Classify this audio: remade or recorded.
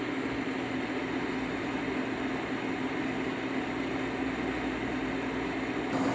recorded